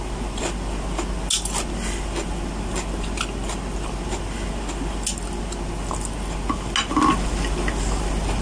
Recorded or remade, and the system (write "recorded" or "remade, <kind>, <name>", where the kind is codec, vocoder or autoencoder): recorded